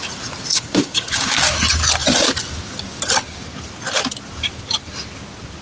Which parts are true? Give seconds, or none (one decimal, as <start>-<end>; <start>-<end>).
0.0-0.5; 1.4-5.6